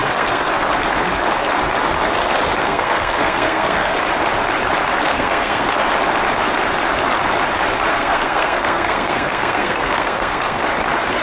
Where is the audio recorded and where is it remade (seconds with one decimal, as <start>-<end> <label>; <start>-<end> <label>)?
0.0-0.5 remade; 0.5-2.6 recorded; 2.6-4.0 remade; 4.0-5.1 recorded; 5.1-5.7 remade; 5.7-7.9 recorded; 7.9-10.6 remade; 10.6-11.2 recorded